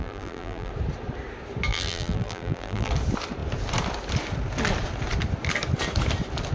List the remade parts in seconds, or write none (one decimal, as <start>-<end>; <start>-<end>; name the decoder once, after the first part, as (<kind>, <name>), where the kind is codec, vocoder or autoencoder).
0.0-0.7 (vocoder, BigVGAN v2); 1.7-2.9